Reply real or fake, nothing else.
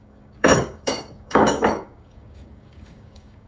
fake